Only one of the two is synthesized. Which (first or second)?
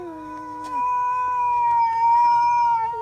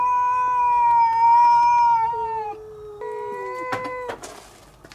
first